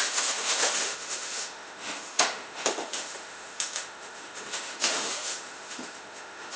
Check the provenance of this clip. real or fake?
fake